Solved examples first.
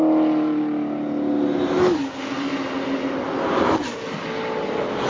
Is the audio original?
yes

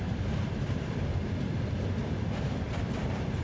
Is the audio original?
yes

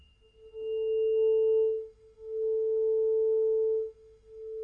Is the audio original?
no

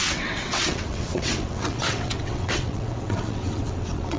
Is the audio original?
no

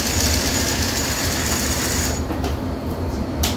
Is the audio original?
no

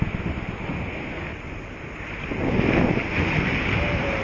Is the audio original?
yes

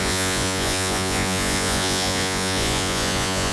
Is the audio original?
no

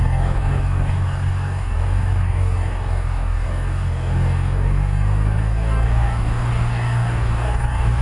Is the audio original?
no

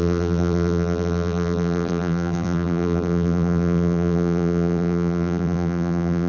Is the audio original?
no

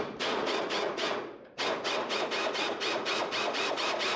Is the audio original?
no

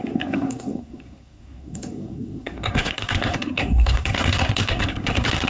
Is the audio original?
no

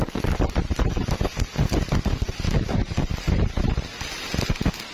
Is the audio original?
yes